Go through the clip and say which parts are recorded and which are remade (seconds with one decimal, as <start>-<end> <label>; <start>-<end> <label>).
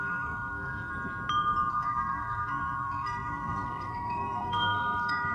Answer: 0.0-0.9 remade; 0.9-1.7 recorded; 1.7-5.3 remade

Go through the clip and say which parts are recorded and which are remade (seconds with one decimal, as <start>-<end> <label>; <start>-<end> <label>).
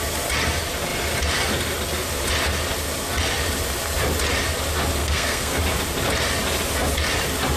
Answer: 0.0-5.0 recorded; 5.0-5.6 remade; 5.6-7.6 recorded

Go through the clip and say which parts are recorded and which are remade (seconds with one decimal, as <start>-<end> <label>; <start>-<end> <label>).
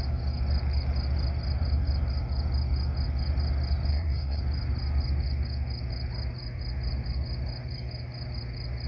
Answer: 0.0-3.9 recorded; 3.9-4.4 remade; 4.4-8.9 recorded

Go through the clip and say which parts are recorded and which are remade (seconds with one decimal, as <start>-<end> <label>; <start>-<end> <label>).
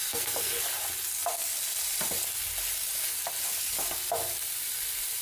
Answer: 0.0-0.6 remade; 0.6-5.2 recorded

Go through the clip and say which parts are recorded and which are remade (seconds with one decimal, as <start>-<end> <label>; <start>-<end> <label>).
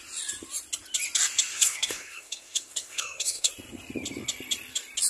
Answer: 0.0-1.5 recorded; 1.5-3.5 remade; 3.5-5.1 recorded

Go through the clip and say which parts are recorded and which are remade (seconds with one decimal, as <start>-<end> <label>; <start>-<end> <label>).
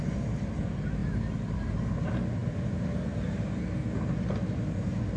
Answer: 0.0-5.2 recorded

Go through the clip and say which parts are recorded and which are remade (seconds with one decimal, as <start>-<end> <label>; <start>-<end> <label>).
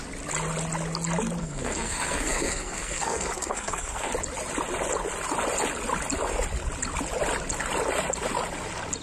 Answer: 0.0-1.4 recorded; 1.4-4.1 remade; 4.1-9.0 recorded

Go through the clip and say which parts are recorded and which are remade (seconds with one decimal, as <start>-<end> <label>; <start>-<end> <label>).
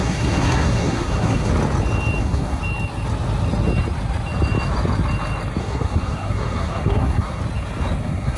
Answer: 0.0-1.5 remade; 1.5-2.2 recorded; 2.2-2.6 remade; 2.6-5.6 recorded; 5.6-7.4 remade; 7.4-8.0 recorded; 8.0-8.4 remade